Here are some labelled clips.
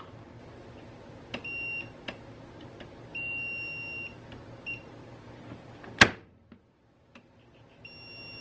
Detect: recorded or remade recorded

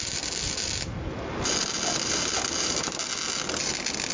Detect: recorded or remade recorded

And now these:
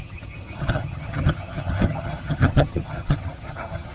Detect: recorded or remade remade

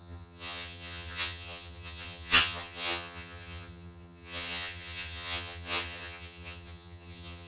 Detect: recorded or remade remade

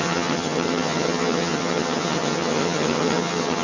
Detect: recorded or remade remade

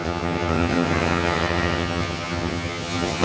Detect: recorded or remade remade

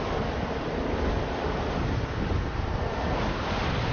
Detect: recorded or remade recorded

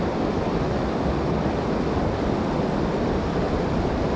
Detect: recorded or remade recorded